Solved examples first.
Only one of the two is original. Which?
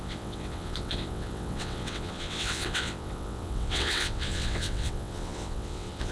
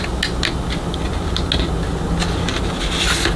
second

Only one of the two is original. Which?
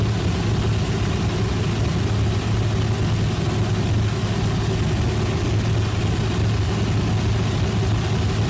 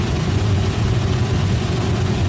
first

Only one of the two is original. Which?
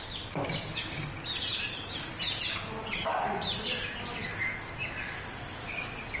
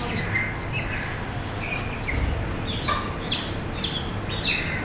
second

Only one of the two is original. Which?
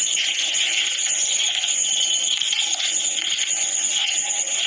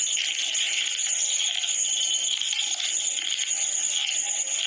second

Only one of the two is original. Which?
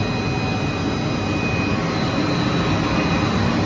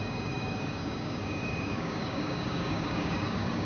first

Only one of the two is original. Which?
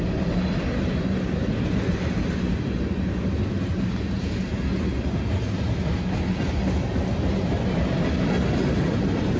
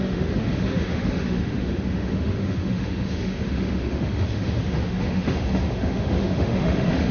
first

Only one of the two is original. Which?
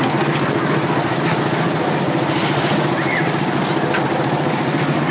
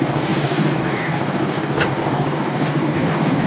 first